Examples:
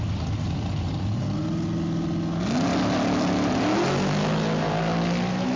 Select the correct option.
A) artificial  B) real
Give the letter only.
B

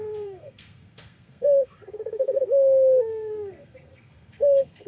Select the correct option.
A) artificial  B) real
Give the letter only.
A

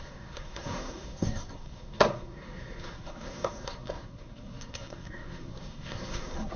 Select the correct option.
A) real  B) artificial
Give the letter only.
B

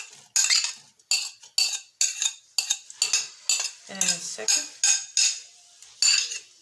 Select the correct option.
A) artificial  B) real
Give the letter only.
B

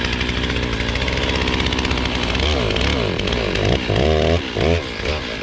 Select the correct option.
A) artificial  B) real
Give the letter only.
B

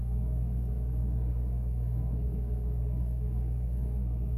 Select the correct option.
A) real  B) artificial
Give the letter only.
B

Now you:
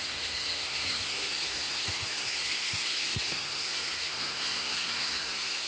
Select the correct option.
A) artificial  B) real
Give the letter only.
A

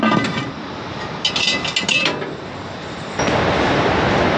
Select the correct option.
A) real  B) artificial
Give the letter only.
A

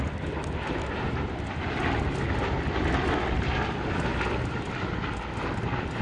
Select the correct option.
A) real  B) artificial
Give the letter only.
A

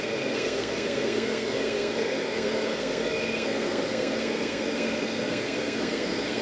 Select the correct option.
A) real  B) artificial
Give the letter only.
B